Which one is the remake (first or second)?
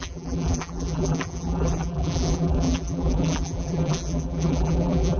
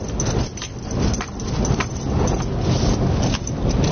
first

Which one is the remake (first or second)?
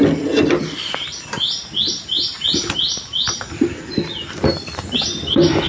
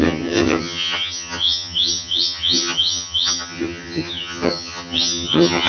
second